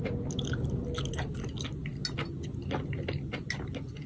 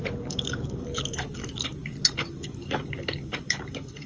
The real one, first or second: first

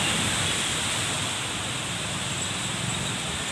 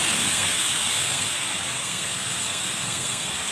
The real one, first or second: first